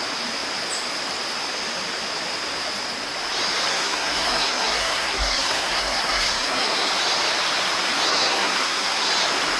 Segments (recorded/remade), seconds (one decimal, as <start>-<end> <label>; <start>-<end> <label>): 0.0-3.7 recorded; 3.7-6.9 remade; 6.9-8.1 recorded; 8.1-9.1 remade; 9.1-9.6 recorded